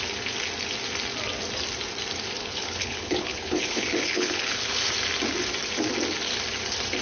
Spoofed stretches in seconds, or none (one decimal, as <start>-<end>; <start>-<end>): 2.4-4.9